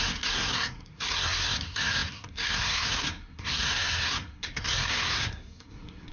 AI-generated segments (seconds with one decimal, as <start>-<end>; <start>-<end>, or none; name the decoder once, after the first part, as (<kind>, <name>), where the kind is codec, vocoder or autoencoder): 0.0-6.1 (codec, SNAC)